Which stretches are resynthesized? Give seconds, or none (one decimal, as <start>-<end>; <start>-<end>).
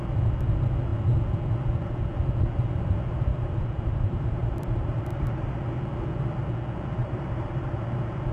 3.3-5.6; 7.0-7.8